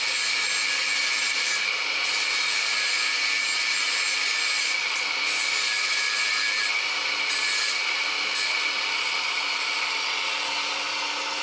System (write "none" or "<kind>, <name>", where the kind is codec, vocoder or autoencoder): none